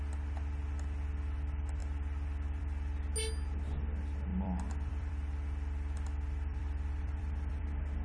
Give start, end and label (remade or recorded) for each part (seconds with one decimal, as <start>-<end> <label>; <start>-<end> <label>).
0.0-4.3 recorded; 4.3-5.1 remade; 5.1-6.5 recorded; 6.5-7.6 remade; 7.6-8.0 recorded